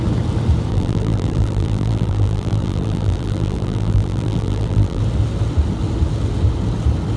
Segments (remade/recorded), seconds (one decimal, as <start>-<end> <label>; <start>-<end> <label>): 0.0-0.7 recorded; 0.7-5.0 remade; 5.0-7.2 recorded